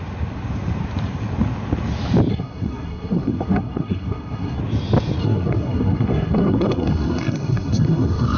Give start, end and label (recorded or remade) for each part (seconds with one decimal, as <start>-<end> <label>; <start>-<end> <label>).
0.0-2.3 recorded; 2.3-4.6 remade; 4.6-5.2 recorded; 5.2-8.4 remade